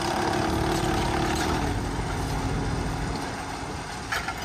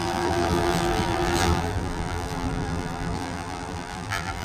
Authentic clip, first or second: first